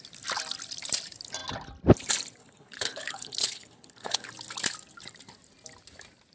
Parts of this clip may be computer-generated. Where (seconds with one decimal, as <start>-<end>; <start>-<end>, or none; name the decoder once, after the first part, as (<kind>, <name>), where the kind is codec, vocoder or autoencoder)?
2.4-4.3 (codec, HILCodec)